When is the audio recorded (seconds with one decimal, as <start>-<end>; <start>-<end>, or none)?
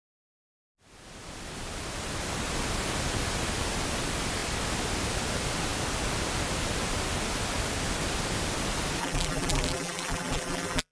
0.0-9.0